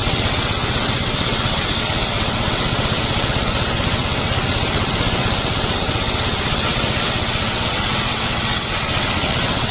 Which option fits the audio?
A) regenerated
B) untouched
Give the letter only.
A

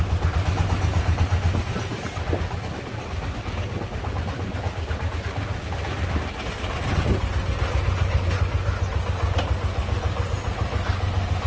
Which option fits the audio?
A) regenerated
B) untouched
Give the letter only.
B